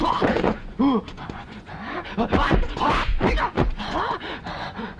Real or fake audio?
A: fake